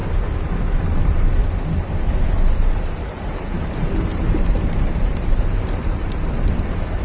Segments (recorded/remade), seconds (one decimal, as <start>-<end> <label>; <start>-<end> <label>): 0.0-0.5 recorded; 0.5-1.4 remade; 1.4-2.3 recorded; 2.3-7.0 remade